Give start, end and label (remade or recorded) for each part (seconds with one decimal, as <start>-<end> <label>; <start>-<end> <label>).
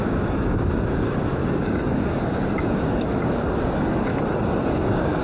0.0-4.1 remade; 4.1-4.7 recorded; 4.7-5.2 remade